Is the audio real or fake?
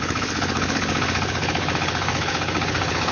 fake